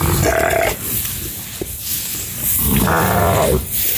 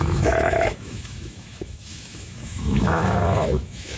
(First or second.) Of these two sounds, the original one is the first